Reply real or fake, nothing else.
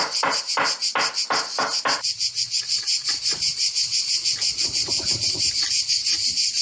real